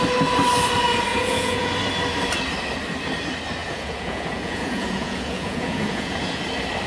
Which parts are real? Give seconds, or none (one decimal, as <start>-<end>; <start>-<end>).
0.0-1.1; 1.7-3.6; 6.4-6.9